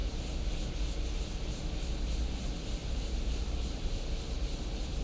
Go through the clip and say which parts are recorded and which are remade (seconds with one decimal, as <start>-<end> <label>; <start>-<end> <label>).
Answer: 0.0-2.8 recorded; 2.8-4.0 remade; 4.0-5.0 recorded